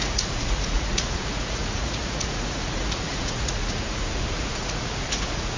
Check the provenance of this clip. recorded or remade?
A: remade